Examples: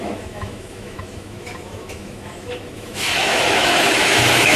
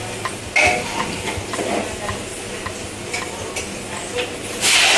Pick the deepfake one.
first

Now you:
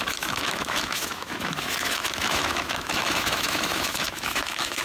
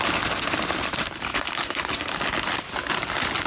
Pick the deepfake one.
first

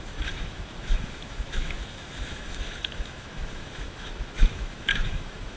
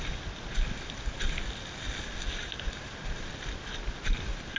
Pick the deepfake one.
first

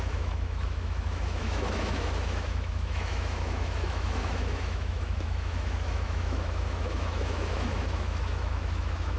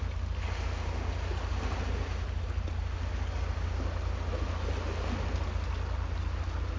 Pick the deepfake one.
first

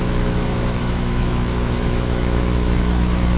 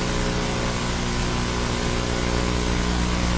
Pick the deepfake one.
first